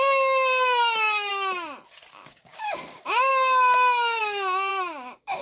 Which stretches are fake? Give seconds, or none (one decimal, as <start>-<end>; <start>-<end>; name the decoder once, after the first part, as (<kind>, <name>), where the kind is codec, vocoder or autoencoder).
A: 0.0-1.3 (codec, DAC); 2.1-5.4